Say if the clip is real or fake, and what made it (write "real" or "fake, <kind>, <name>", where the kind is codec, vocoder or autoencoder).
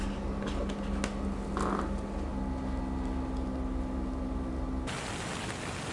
real